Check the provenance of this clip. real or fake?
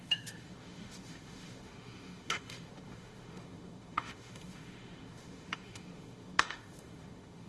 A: fake